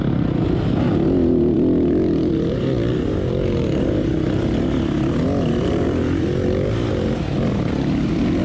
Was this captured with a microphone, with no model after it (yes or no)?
yes